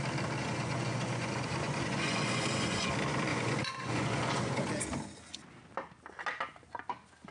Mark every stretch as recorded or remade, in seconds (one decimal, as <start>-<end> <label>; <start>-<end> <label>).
0.0-0.4 recorded; 0.4-2.9 remade; 2.9-3.3 recorded; 3.3-4.7 remade; 4.7-7.3 recorded